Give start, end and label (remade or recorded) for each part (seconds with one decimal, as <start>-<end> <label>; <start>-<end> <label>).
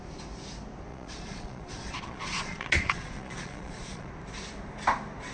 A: 0.0-0.9 recorded; 0.9-4.1 remade; 4.1-5.3 recorded